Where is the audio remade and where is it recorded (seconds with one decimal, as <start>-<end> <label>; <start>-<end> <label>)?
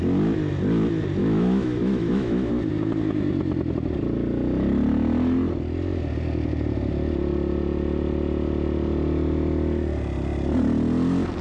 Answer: 0.0-1.2 recorded; 1.2-2.5 remade; 2.5-11.4 recorded